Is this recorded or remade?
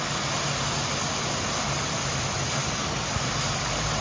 recorded